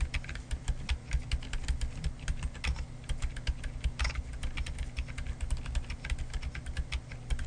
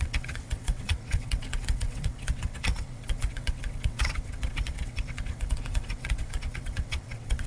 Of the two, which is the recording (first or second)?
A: first